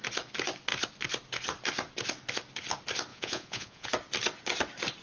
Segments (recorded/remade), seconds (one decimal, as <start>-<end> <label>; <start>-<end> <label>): 0.0-3.1 recorded; 3.1-3.9 remade; 3.9-5.0 recorded